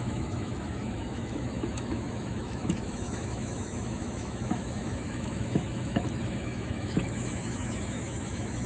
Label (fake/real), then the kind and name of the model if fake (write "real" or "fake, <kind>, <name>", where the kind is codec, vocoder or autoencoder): fake, autoencoder, DAC-VAE